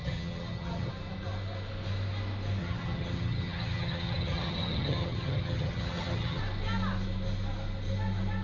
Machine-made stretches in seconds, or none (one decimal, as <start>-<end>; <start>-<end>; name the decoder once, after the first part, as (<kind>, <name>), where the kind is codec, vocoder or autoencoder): 0.0-0.9 (vocoder, HiFi-GAN); 2.6-6.4